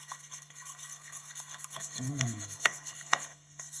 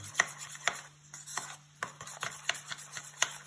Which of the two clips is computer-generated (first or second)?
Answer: first